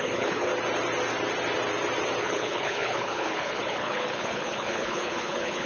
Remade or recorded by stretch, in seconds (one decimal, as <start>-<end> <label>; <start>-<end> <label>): 0.0-0.5 remade; 0.5-2.2 recorded; 2.2-5.7 remade